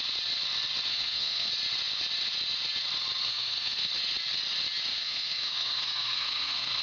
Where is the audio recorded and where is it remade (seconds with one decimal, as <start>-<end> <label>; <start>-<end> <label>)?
0.0-0.9 recorded; 0.9-1.5 remade; 1.5-3.2 recorded; 3.2-3.9 remade; 3.9-4.9 recorded; 4.9-6.8 remade